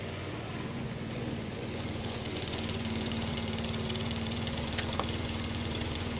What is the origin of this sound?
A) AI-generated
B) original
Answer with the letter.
A